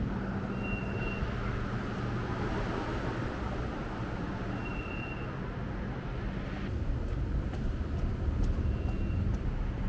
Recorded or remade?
recorded